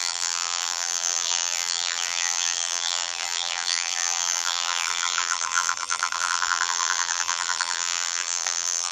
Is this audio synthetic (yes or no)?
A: yes